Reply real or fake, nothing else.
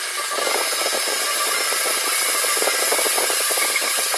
real